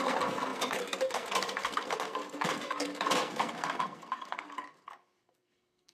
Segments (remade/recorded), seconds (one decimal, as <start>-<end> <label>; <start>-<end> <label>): 0.0-5.9 remade